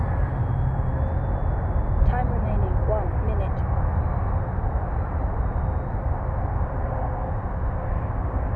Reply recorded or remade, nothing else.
recorded